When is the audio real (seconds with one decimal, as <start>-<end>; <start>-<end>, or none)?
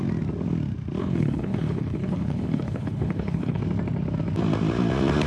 0.0-1.0; 3.6-5.3